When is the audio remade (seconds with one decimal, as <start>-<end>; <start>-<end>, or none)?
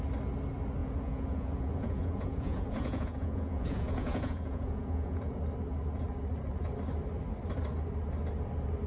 0.8-5.4